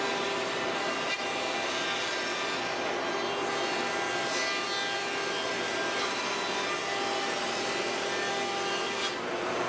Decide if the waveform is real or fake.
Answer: real